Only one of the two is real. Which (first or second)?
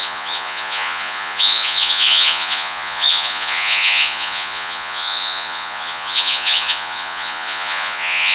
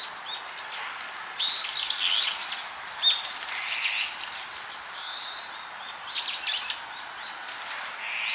second